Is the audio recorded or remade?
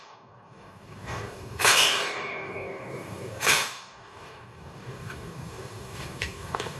remade